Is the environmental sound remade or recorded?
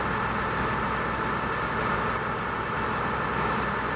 recorded